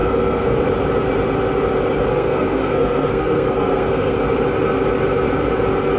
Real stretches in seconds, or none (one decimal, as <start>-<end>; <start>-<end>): 0.6-2.1; 4.2-6.0